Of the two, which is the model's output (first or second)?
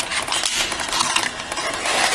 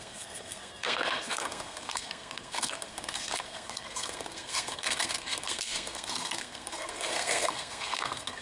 second